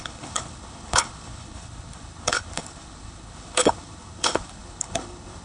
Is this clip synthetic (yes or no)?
yes